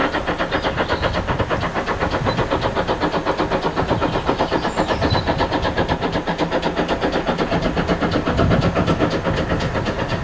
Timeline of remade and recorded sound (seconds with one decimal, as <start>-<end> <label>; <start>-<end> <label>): 0.0-10.2 recorded